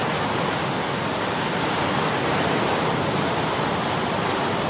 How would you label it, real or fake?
real